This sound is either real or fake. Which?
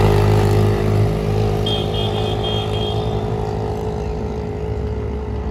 real